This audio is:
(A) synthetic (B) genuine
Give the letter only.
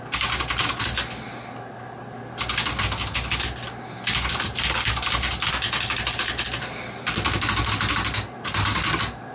B